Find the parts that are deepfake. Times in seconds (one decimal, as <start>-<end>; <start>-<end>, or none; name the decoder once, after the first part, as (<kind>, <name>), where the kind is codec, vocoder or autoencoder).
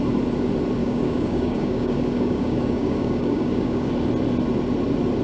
0.8-3.9 (codec, DAC)